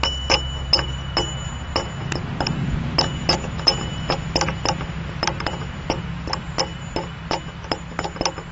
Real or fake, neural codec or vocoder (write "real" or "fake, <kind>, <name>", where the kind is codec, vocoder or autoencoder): real